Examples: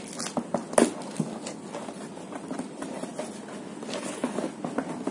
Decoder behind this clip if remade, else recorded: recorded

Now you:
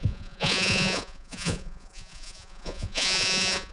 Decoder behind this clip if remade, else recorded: remade, vocoder, Vocos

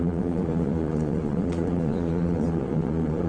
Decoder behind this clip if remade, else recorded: remade, vocoder, Vocos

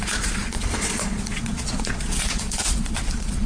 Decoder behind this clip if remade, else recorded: remade, vocoder, Vocos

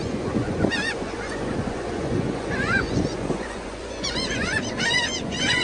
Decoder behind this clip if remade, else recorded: remade, vocoder, Vocos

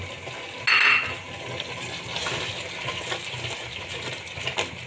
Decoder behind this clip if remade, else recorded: recorded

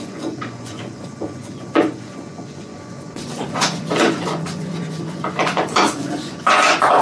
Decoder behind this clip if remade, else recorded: remade, vocoder, Vocos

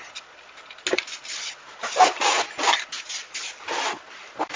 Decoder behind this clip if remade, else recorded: recorded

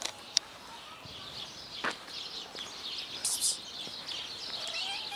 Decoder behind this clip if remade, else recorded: recorded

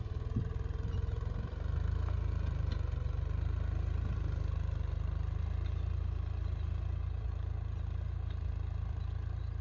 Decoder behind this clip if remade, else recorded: recorded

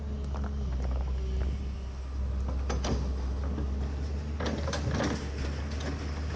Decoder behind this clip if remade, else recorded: recorded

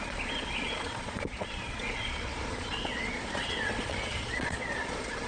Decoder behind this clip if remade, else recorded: remade, vocoder, Vocos